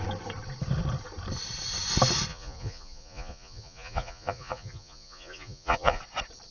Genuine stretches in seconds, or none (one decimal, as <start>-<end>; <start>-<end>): 0.0-2.3; 6.0-6.5